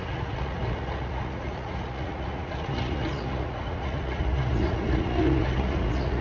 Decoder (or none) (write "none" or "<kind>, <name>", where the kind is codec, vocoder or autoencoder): vocoder, Vocos